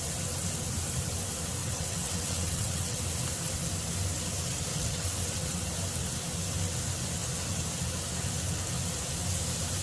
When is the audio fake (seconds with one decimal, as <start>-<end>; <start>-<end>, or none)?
1.6-3.0; 4.7-5.6